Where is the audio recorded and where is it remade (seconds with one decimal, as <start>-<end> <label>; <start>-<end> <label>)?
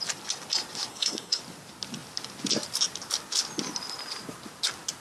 0.0-0.9 recorded; 0.9-1.4 remade; 1.4-5.0 recorded